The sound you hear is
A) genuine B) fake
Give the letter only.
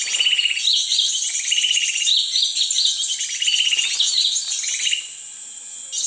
A